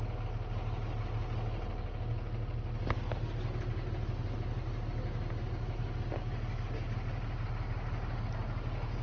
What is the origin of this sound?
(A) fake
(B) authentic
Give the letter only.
B